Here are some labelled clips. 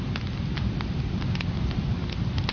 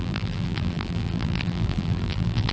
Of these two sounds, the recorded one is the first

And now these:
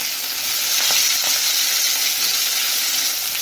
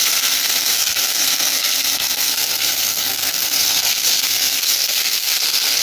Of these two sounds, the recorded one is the first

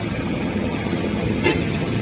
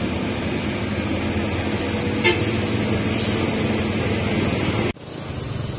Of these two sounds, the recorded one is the second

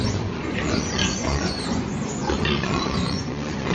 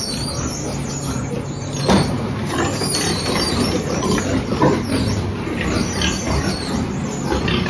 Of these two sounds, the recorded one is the second